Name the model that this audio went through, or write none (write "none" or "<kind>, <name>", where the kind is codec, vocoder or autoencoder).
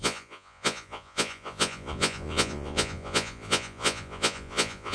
vocoder, Vocos